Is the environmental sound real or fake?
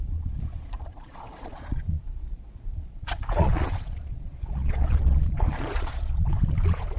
fake